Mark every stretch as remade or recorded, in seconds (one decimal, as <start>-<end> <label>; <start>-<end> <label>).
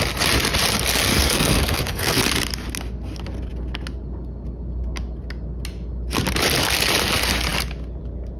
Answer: 0.0-1.1 recorded; 1.1-2.2 remade; 2.2-8.4 recorded